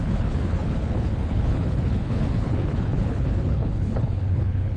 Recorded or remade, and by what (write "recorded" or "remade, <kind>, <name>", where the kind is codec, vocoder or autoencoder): remade, codec, HILCodec